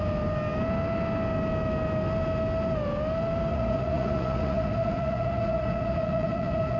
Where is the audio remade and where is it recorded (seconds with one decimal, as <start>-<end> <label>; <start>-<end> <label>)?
0.0-3.5 recorded; 3.5-6.8 remade